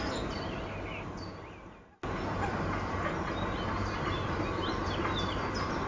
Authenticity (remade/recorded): recorded